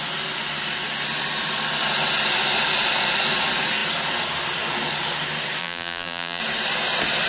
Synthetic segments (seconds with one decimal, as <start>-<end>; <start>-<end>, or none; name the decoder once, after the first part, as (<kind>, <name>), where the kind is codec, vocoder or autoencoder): 5.6-6.4 (vocoder, BigVGAN v2)